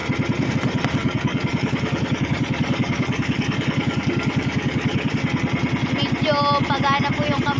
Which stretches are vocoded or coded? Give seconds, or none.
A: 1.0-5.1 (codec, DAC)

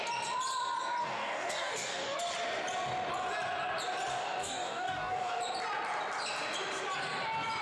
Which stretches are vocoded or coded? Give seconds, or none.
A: 1.0-2.2 (codec, DAC); 4.1-5.4

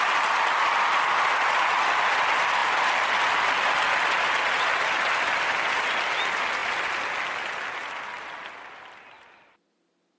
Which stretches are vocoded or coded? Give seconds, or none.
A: none

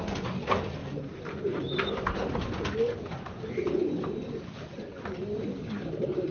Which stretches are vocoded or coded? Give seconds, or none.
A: 5.5-6.3 (codec, DAC)